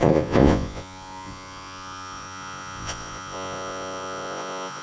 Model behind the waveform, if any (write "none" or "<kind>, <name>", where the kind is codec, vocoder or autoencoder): vocoder, Vocos